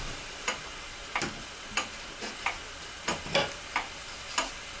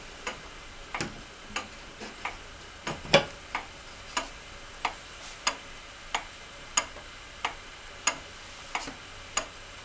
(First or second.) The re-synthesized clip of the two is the first